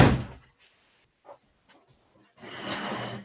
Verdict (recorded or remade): recorded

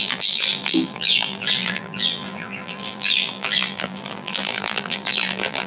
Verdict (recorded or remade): remade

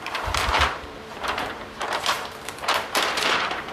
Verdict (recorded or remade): remade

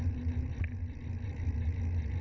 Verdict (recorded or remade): recorded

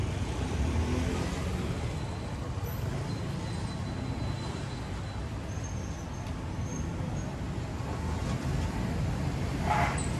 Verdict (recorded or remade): recorded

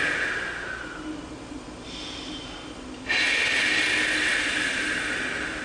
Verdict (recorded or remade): remade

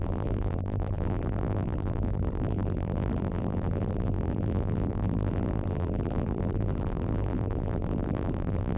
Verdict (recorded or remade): remade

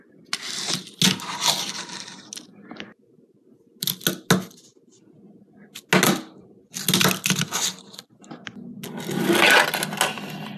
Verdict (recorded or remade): recorded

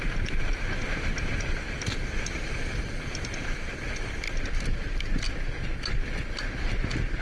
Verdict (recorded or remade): recorded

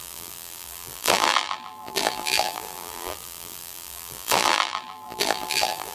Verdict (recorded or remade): remade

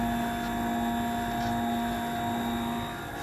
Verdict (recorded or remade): recorded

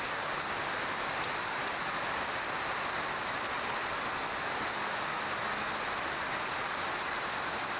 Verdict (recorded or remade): recorded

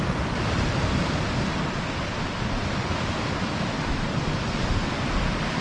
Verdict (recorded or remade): recorded